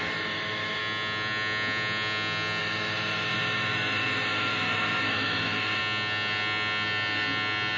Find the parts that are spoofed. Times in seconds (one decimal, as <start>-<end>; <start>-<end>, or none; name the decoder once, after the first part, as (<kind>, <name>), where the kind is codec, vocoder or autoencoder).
0.0-0.8 (autoencoder, DAC-VAE); 2.6-5.8